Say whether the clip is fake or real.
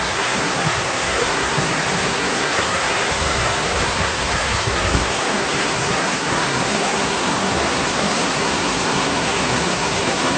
fake